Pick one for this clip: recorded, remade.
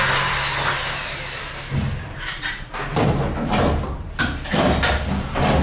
recorded